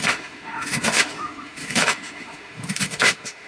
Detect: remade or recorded remade